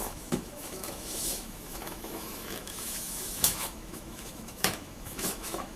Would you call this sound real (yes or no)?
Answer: no